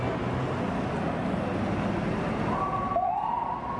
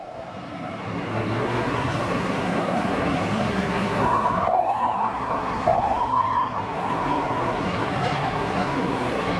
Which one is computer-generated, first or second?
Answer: second